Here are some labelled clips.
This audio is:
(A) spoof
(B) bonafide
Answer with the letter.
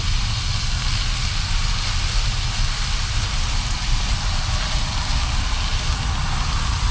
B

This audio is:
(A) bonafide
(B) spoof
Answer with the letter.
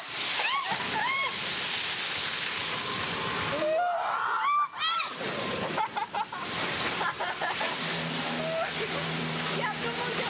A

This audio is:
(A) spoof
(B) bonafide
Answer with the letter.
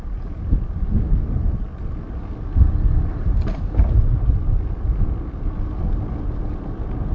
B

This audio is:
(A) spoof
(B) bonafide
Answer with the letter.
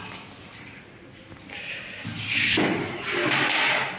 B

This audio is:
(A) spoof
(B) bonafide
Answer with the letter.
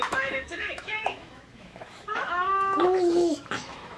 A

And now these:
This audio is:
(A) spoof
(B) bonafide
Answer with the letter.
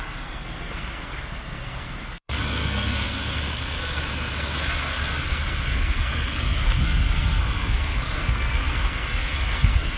A